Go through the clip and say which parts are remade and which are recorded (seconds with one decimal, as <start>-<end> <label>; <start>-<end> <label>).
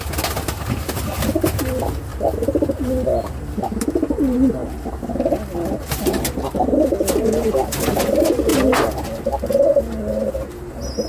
0.0-2.1 recorded; 2.1-2.9 remade; 2.9-11.1 recorded